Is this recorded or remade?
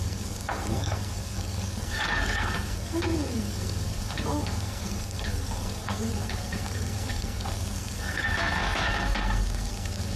remade